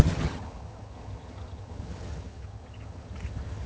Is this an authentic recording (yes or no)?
no